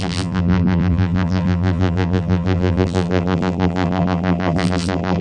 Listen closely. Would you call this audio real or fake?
fake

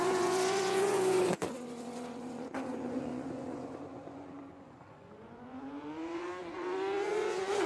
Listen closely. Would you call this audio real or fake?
fake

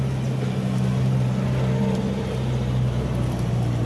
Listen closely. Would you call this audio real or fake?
real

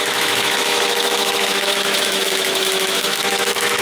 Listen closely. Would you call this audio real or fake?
fake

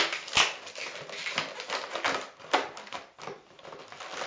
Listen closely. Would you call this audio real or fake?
real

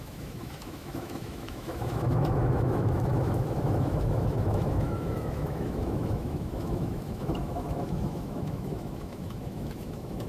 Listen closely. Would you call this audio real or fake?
fake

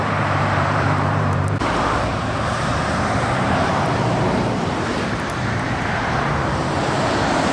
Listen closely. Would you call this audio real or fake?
fake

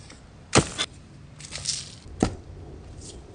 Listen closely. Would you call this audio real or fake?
real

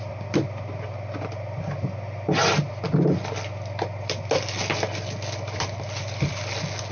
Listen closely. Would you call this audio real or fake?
real